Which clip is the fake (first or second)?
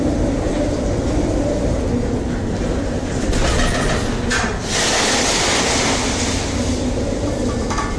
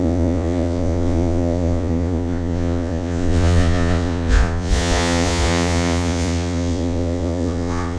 second